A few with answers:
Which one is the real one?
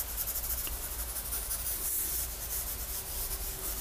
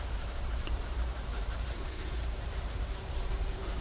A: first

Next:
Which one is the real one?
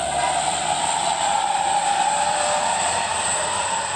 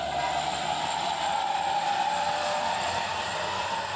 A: second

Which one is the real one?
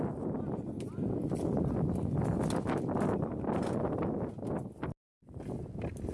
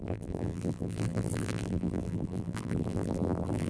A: first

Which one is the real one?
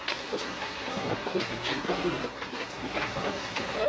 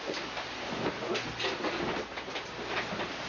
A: second